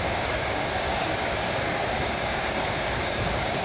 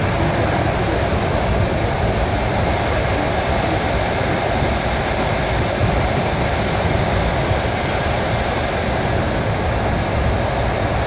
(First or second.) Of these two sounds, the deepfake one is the first